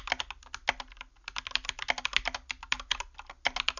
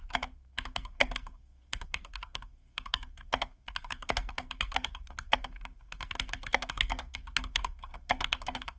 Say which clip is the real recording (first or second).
first